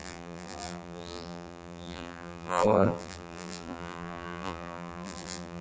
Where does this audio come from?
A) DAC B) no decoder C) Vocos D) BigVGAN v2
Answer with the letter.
D